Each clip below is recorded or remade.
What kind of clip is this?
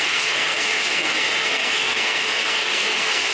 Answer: remade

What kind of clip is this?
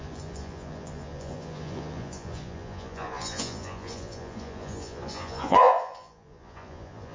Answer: remade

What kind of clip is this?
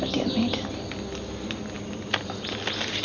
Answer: recorded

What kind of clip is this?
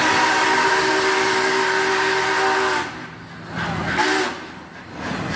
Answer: recorded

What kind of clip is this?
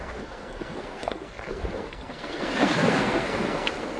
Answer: remade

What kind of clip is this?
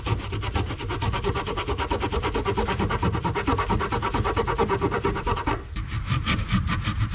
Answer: recorded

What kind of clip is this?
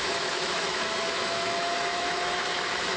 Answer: remade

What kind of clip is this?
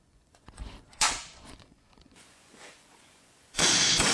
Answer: remade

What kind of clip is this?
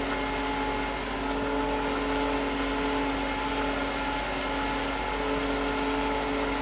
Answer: recorded